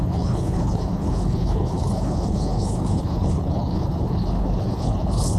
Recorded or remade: remade